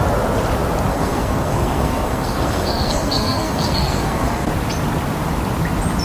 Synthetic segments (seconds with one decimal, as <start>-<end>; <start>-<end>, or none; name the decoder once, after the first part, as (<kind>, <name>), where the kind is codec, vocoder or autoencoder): 0.9-4.5 (codec, SNAC)